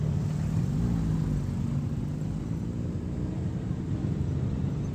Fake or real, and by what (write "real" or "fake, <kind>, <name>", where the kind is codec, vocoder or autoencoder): real